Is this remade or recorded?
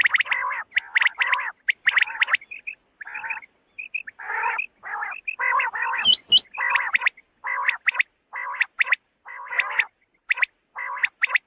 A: recorded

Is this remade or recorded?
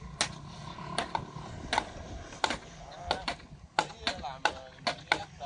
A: recorded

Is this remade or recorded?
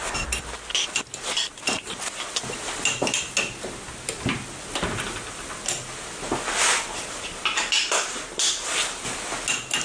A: recorded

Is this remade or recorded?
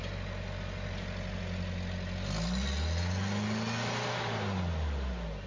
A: recorded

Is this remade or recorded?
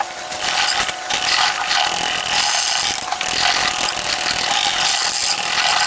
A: recorded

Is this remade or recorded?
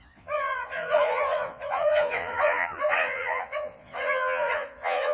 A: remade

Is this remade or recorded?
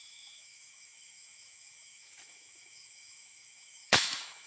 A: remade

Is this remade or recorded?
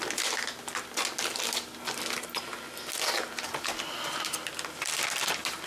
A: recorded